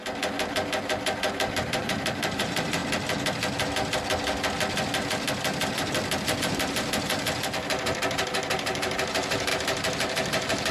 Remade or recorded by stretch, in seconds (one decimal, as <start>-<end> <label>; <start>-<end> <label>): 0.0-2.8 remade; 2.8-6.4 recorded; 6.4-10.7 remade